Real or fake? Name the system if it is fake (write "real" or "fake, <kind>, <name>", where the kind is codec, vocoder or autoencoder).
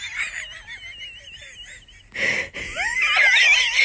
real